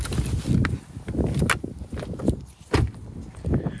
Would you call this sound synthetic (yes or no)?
no